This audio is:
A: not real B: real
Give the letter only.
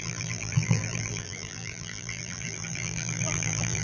A